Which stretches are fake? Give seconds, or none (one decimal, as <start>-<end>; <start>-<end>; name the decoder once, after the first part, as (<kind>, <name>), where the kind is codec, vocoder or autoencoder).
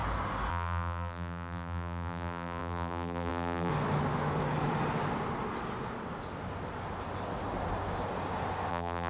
0.5-3.7 (vocoder, BigVGAN v2); 8.7-9.1